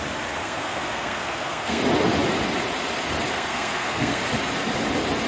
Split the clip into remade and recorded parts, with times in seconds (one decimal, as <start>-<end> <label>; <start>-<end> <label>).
0.0-0.4 recorded; 0.4-1.8 remade; 1.8-3.3 recorded; 3.3-4.2 remade; 4.2-5.3 recorded